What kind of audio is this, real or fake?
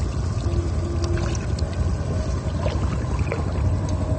real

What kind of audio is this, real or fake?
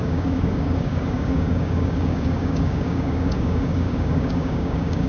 fake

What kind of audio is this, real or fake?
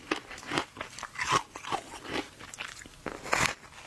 real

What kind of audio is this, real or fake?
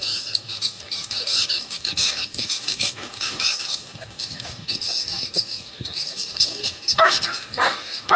fake